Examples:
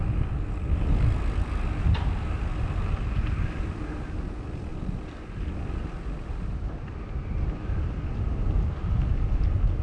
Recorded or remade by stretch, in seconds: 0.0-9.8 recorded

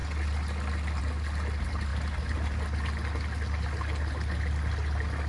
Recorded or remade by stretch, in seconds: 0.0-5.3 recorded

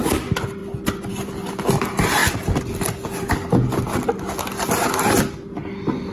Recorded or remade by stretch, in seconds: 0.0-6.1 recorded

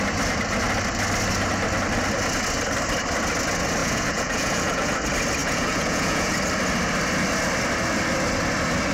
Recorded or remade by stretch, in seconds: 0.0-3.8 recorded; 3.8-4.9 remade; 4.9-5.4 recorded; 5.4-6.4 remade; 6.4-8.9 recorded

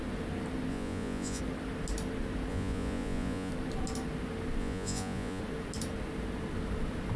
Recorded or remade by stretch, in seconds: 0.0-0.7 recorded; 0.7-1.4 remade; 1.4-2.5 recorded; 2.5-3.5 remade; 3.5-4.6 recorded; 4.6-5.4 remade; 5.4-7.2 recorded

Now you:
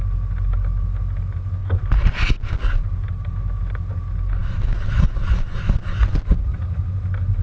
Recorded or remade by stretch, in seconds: 0.0-6.3 recorded; 6.3-6.8 remade; 6.8-7.4 recorded

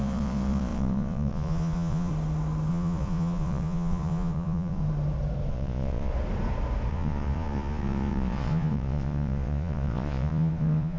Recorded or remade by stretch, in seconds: 0.0-2.1 remade; 2.1-2.7 recorded; 2.7-4.8 remade; 4.8-5.5 recorded; 5.5-6.1 remade; 6.1-6.9 recorded; 6.9-11.0 remade